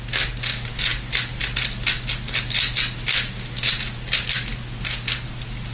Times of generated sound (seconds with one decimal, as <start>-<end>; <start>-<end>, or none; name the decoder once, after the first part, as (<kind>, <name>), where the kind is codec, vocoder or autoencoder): none